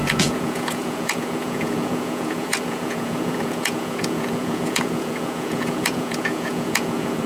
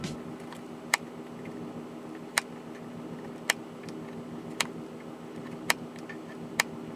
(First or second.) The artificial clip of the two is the first